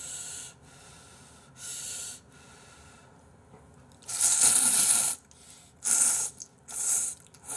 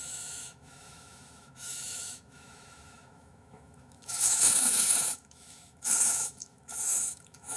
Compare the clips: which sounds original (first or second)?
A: first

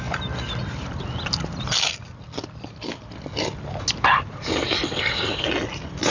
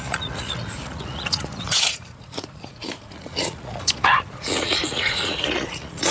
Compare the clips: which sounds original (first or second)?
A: first